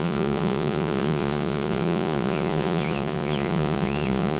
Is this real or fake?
fake